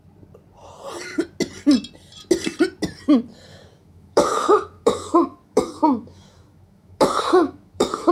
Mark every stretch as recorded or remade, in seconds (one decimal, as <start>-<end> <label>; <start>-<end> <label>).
0.0-3.5 recorded; 3.5-8.1 remade